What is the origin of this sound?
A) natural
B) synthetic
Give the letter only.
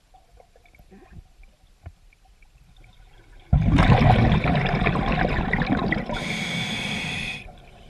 A